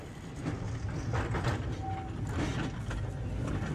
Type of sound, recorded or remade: recorded